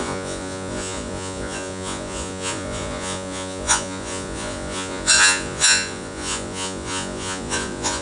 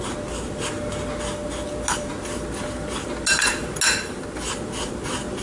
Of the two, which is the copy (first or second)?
first